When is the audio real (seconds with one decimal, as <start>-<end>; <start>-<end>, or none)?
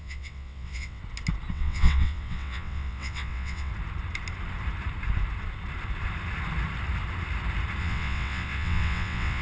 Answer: 1.0-1.5; 3.7-7.8